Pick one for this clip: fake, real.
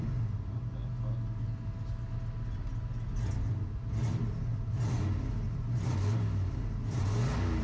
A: real